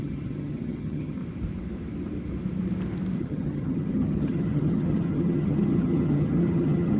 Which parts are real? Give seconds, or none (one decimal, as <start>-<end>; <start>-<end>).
1.2-3.2